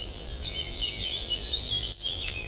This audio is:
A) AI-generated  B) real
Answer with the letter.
A